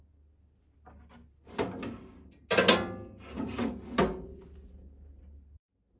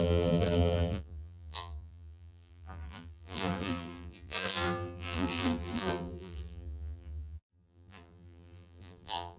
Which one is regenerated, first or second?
second